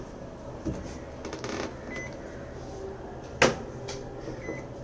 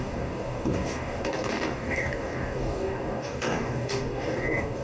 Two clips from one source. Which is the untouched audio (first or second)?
first